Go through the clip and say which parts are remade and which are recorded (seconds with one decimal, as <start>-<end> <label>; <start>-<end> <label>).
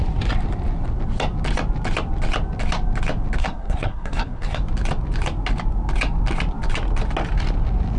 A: 0.0-3.4 recorded; 3.4-4.6 remade; 4.6-8.0 recorded